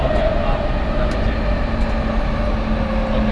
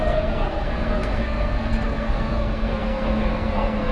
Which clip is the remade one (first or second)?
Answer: second